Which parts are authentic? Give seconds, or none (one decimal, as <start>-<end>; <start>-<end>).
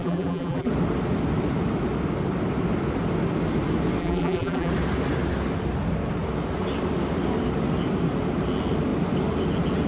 0.7-4.0; 4.7-9.9